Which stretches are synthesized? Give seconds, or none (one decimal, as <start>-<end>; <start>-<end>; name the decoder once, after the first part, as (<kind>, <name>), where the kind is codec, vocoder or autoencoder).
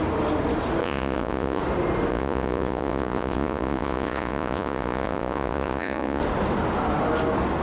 0.8-1.6 (vocoder, Vocos); 2.1-6.2